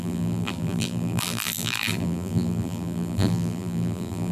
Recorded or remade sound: remade